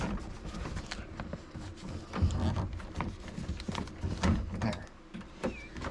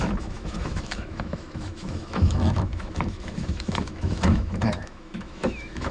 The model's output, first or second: second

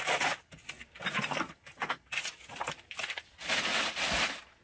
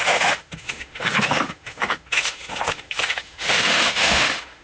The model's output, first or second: second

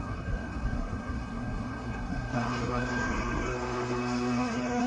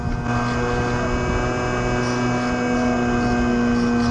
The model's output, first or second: first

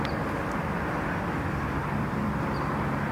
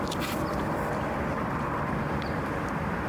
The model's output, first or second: second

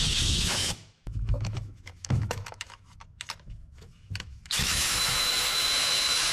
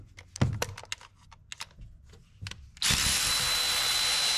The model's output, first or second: first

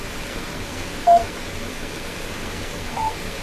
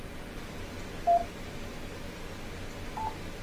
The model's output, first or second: first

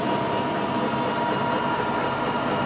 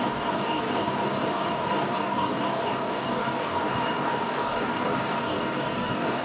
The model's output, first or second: second